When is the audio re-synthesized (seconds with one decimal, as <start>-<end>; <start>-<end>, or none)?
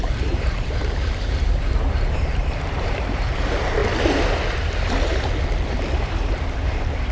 0.0-3.8; 6.5-7.1